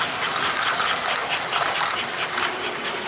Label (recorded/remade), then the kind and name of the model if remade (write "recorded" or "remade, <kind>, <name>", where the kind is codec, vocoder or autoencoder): recorded